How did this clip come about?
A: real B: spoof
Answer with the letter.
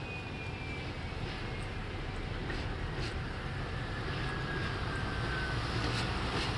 A